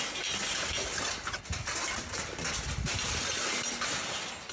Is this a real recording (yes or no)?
yes